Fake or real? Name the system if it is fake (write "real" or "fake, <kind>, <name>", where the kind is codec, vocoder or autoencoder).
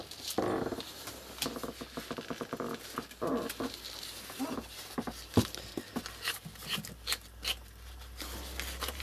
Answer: real